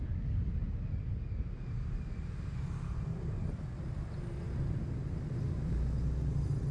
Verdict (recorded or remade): recorded